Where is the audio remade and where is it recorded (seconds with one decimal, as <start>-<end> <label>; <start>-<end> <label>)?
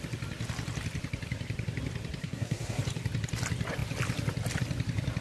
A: 0.0-2.2 recorded; 2.2-2.8 remade; 2.8-5.2 recorded